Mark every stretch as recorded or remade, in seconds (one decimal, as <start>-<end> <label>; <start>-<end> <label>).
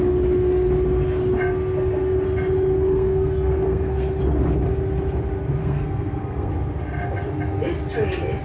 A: 0.0-2.9 recorded; 2.9-4.2 remade; 4.2-5.6 recorded; 5.6-6.5 remade; 6.5-8.4 recorded